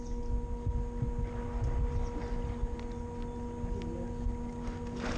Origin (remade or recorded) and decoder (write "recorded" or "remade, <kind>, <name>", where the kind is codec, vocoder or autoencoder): recorded